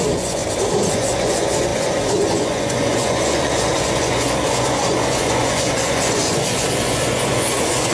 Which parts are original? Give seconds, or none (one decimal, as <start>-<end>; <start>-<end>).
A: 0.4-0.9